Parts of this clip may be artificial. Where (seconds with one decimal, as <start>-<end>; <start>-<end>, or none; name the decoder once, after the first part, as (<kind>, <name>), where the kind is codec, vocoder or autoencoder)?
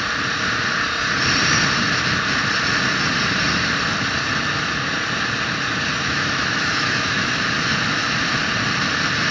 6.0-7.4 (autoencoder, DAC-VAE)